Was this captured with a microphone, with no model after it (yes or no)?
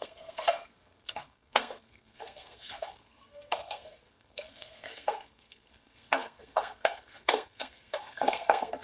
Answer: no